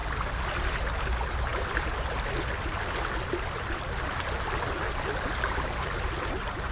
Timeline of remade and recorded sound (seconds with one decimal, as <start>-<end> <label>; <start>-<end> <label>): 0.0-6.7 recorded